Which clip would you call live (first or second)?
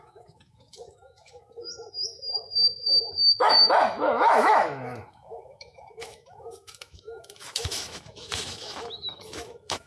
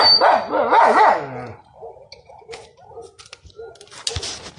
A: second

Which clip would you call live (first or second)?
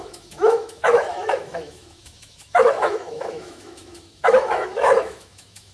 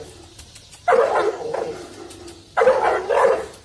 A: second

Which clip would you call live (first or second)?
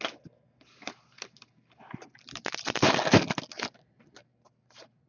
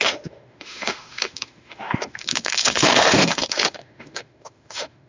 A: first